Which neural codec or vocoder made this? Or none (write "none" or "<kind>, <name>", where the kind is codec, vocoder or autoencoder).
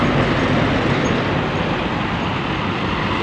none